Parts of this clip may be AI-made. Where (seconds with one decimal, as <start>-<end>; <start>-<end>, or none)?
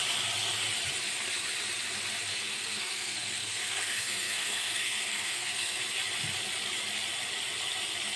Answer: 2.3-5.8